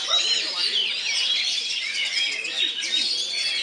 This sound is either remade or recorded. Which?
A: remade